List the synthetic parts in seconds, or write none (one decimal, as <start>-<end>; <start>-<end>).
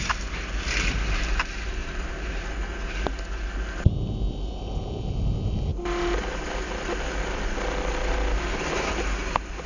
1.8-2.4